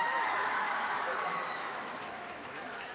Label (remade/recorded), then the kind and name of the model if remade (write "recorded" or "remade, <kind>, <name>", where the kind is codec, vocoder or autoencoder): remade, autoencoder, DAC-VAE